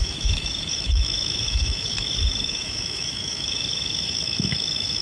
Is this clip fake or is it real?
fake